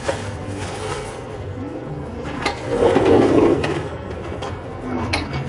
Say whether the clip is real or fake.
fake